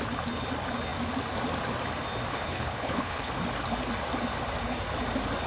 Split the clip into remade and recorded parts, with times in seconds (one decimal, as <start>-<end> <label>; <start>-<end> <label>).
0.0-2.3 recorded; 2.3-3.3 remade; 3.3-5.5 recorded